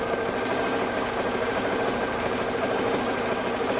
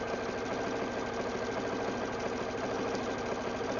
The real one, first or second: second